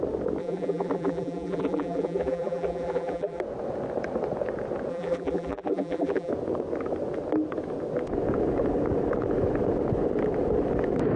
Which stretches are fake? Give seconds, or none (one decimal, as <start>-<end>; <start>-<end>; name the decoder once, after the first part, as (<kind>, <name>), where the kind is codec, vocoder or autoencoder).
0.4-3.4 (vocoder, BigVGAN v2); 4.9-6.3